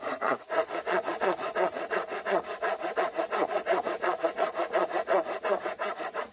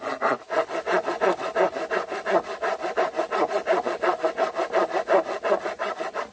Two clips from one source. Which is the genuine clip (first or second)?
second